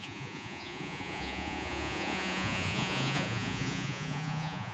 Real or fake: fake